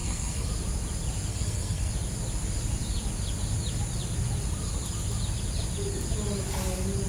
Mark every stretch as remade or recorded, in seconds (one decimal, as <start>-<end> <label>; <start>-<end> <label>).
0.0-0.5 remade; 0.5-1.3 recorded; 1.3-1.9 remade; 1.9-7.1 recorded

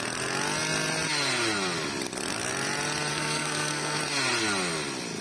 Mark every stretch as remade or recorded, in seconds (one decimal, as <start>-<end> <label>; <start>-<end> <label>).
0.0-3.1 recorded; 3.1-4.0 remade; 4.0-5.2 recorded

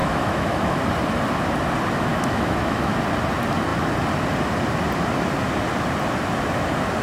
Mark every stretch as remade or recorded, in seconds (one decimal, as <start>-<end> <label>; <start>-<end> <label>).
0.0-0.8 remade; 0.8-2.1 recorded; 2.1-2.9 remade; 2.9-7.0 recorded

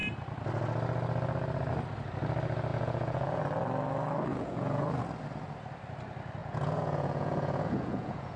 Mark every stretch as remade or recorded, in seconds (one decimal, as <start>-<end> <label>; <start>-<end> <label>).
0.0-2.7 recorded; 2.7-3.4 remade; 3.4-4.3 recorded; 4.3-5.0 remade; 5.0-6.4 recorded; 6.4-8.4 remade

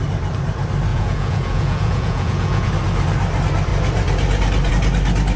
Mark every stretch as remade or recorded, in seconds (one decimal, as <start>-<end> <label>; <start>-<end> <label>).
0.0-0.9 recorded; 0.9-2.7 remade; 2.7-5.4 recorded